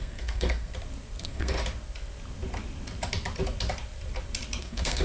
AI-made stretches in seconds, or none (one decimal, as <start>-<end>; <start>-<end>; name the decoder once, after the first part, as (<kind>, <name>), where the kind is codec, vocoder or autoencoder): 0.0-0.7 (codec, SNAC); 1.2-1.6; 4.6-5.0